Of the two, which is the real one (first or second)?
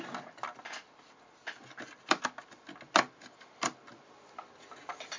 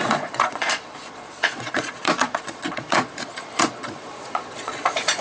first